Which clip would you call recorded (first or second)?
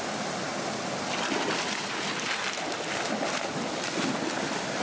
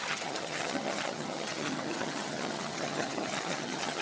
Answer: first